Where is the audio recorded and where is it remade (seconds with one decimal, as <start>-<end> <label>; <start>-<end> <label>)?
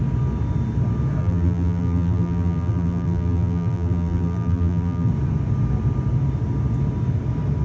0.0-1.2 recorded; 1.2-5.1 remade; 5.1-7.6 recorded